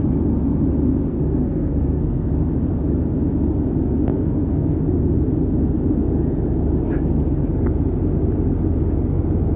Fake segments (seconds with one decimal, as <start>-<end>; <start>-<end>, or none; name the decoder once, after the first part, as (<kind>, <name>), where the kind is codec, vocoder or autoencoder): 1.1-2.3 (codec, SNAC); 4.1-4.8